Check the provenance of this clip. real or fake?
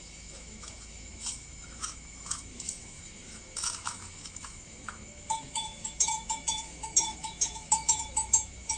fake